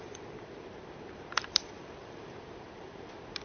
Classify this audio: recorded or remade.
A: remade